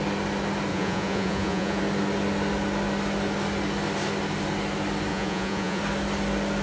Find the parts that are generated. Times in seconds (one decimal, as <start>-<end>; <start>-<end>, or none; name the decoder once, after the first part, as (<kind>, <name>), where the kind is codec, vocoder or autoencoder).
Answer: 0.7-1.8 (vocoder, Vocos); 5.1-5.8